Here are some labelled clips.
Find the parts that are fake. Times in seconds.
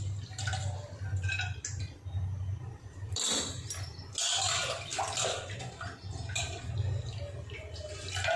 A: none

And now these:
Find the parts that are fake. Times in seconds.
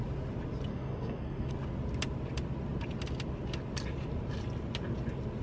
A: 0.7-1.5 (codec, SNAC)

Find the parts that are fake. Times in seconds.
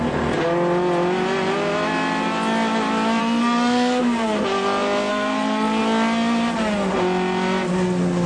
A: 3.2-4.0 (codec, SNAC); 5.1-5.8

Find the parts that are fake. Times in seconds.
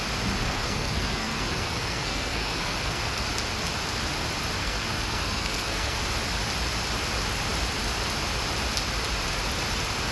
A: 0.4-3.2 (codec, SNAC); 4.6-6.0